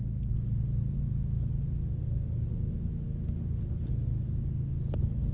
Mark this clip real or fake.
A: real